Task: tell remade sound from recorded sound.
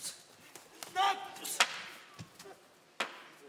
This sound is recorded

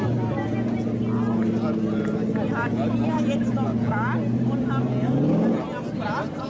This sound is recorded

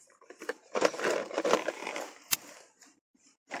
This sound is remade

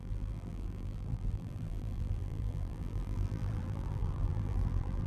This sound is remade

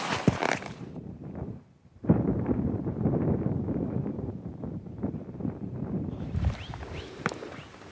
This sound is remade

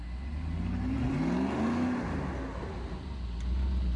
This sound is recorded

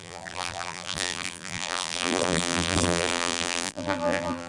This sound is remade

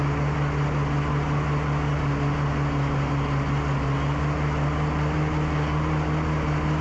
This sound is recorded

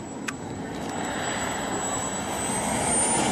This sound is recorded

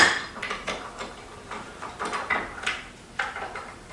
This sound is remade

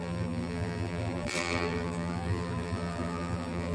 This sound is remade